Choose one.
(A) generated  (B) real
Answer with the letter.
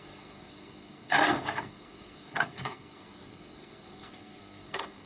A